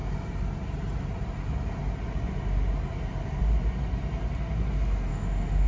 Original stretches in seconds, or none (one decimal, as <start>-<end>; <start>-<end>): 0.0-5.1